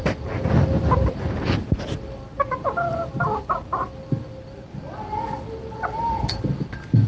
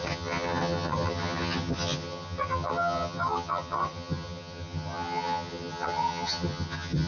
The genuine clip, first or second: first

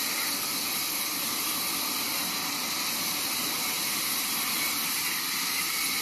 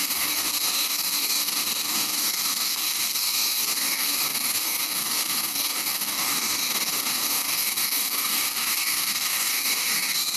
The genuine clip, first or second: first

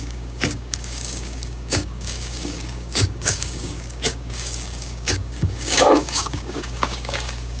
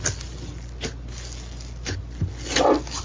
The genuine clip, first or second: second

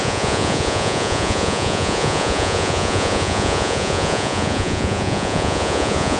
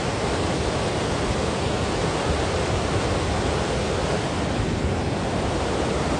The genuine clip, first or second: second